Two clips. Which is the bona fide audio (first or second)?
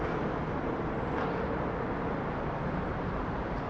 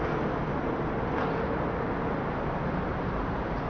second